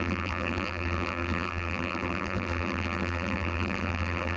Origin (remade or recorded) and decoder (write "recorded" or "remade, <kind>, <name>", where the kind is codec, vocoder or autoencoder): remade, vocoder, BigVGAN v2